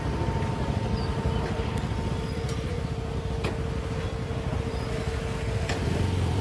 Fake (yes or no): no